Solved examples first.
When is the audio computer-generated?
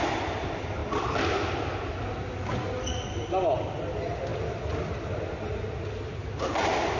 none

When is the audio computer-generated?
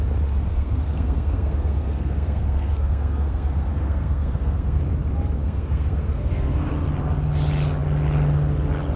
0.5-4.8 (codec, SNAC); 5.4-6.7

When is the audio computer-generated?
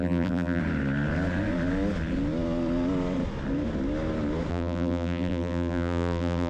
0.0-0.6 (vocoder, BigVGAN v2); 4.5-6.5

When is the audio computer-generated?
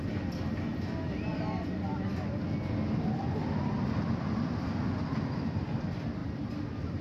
none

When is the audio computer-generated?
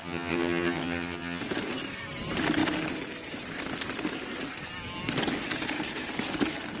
0.0-1.4 (vocoder, HiFi-GAN)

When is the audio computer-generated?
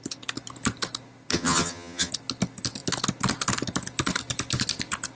1.3-2.1 (vocoder, HiFi-GAN)